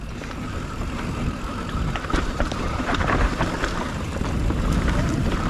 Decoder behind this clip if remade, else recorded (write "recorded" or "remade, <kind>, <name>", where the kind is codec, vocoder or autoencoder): remade, vocoder, BigVGAN v2